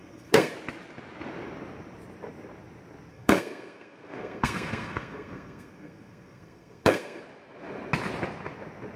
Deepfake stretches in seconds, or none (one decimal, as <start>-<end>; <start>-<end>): 0.0-0.5; 3.1-7.2